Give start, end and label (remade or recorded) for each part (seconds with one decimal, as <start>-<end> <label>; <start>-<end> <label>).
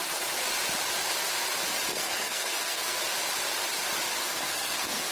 0.0-1.9 recorded; 1.9-3.0 remade; 3.0-4.2 recorded; 4.2-5.1 remade